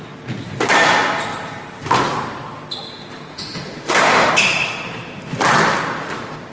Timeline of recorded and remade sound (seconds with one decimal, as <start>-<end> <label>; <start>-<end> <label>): 0.0-3.3 recorded; 3.3-4.3 remade; 4.3-6.5 recorded